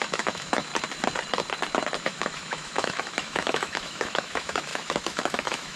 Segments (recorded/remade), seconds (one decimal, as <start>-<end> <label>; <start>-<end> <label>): 0.0-0.7 remade; 0.7-2.0 recorded; 2.0-5.8 remade